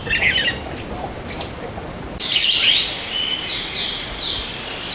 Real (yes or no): yes